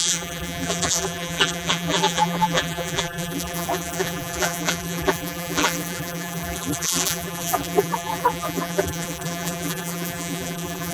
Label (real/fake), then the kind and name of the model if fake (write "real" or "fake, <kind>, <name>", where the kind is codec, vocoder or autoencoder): fake, vocoder, BigVGAN v2